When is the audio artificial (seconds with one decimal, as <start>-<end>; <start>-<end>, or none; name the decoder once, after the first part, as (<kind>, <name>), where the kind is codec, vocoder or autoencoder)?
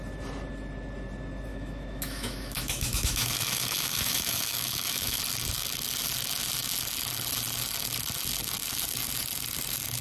1.5-5.2 (autoencoder, DAC-VAE)